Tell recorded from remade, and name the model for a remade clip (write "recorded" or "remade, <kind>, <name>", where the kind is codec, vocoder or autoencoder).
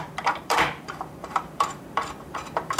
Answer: remade, vocoder, BigVGAN v2